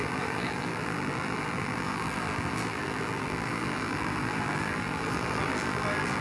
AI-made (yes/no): yes